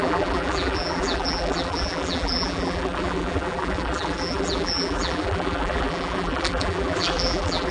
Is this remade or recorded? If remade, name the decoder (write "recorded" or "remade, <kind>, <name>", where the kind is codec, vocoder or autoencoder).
remade, vocoder, BigVGAN v2